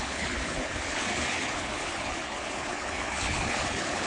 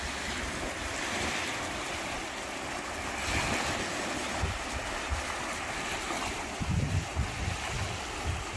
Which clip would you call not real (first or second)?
first